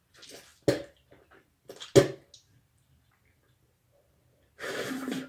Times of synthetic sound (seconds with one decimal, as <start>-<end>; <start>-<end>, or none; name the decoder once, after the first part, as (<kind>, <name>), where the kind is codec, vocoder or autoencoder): none